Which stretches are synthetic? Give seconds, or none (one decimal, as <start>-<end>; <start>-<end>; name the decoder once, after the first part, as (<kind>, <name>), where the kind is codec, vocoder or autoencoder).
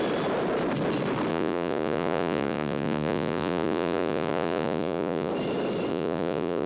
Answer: 1.3-5.3 (vocoder, Vocos); 5.9-6.7